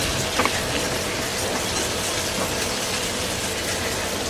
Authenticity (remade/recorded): recorded